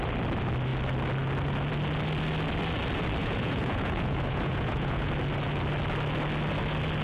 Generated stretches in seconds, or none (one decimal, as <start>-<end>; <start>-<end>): 3.2-5.1